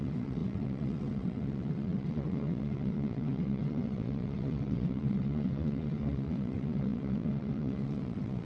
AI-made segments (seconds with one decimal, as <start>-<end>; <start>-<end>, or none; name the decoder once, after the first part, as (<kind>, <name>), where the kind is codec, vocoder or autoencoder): 0.0-8.4 (vocoder, WaveNeXt)